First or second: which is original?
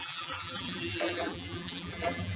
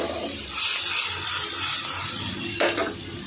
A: second